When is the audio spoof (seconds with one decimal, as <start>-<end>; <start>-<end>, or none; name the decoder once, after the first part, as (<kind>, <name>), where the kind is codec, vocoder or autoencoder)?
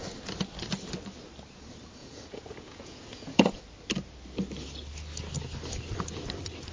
2.0-3.6 (vocoder, Vocos)